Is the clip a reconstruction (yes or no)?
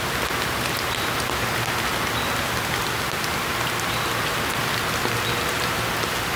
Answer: no